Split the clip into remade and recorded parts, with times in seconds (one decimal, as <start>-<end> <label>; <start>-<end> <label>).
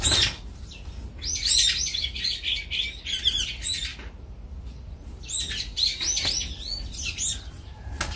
0.0-8.2 recorded